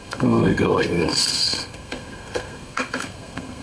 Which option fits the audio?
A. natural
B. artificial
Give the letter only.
B